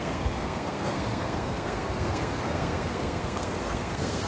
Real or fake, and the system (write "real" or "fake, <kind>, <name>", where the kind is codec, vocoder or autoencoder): fake, codec, SNAC